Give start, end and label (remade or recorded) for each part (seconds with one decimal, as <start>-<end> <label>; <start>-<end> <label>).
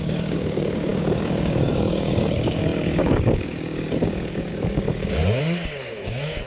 0.0-6.5 remade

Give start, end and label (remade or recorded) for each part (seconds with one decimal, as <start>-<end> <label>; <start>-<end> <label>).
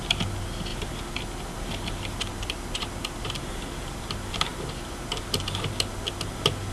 0.0-6.7 recorded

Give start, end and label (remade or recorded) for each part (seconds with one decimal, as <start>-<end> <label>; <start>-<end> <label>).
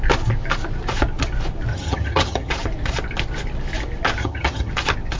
0.0-1.7 recorded; 1.7-2.5 remade; 2.5-4.2 recorded; 4.2-4.7 remade; 4.7-5.2 recorded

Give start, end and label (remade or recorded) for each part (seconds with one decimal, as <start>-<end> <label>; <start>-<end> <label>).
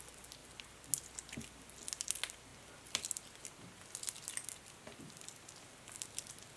0.0-6.6 recorded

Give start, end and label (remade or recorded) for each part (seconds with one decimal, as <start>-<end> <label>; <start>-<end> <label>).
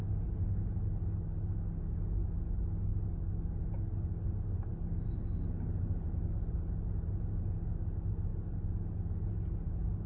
0.0-10.1 recorded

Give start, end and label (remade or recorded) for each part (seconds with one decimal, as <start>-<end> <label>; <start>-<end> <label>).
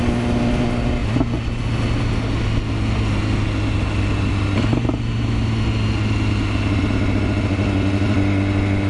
0.0-8.9 recorded